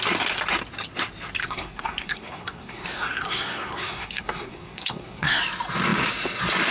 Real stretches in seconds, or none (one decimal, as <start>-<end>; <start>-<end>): 0.0-1.4; 5.4-6.7